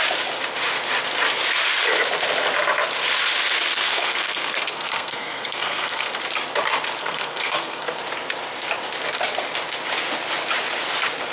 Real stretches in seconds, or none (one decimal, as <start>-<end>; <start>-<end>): 0.0-3.7; 6.1-7.0; 8.0-11.3